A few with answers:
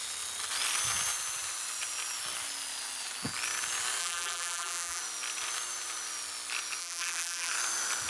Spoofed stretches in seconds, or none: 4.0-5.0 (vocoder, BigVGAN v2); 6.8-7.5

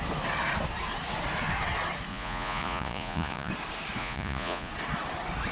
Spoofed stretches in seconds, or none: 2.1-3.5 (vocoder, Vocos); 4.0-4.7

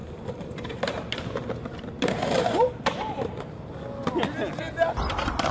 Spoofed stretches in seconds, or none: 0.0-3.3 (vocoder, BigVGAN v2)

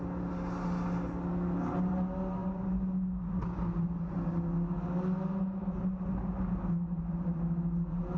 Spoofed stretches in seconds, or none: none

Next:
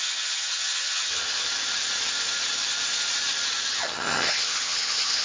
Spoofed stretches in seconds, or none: 0.0-1.5 (vocoder, HiFi-GAN); 3.7-5.2

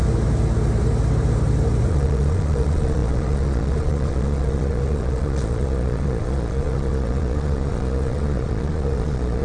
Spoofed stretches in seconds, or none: 1.9-9.4 (vocoder, Vocos)

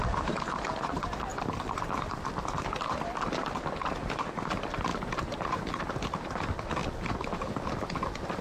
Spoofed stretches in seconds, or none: none